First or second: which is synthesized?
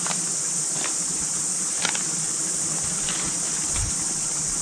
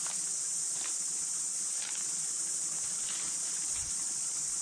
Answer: second